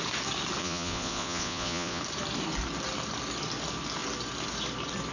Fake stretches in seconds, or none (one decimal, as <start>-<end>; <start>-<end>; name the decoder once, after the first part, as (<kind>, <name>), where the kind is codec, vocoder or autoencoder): 0.6-2.0 (vocoder, Vocos)